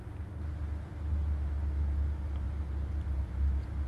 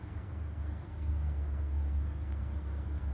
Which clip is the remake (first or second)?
second